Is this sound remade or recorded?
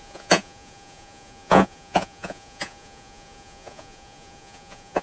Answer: remade